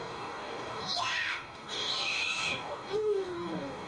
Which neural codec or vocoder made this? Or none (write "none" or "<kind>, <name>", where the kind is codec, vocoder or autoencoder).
codec, DAC